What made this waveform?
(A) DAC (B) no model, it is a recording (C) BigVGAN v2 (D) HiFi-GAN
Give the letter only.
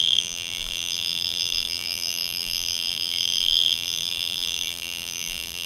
C